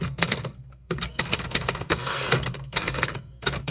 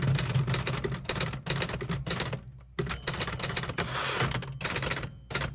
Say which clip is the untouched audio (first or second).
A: second